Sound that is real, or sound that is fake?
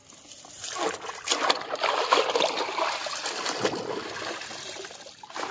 real